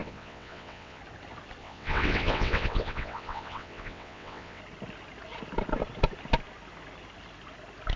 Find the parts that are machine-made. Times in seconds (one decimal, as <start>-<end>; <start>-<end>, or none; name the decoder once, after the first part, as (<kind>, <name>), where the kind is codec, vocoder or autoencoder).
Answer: 0.0-1.0 (vocoder, WaveNeXt); 1.6-4.6